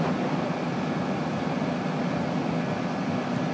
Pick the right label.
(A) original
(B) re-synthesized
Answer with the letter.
A